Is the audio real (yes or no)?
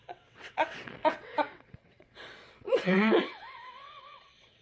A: no